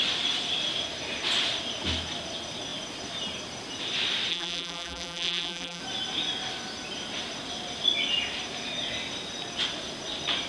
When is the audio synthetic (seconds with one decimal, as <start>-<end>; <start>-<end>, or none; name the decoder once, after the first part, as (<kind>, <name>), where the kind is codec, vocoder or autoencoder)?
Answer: 4.3-5.8 (vocoder, BigVGAN v2)